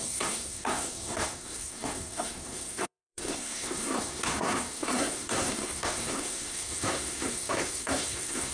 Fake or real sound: fake